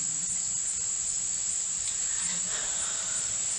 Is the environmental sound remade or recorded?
recorded